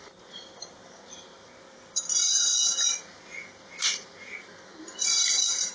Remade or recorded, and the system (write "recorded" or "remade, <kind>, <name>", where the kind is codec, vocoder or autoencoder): recorded